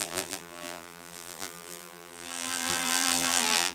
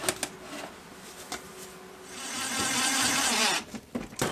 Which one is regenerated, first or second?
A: first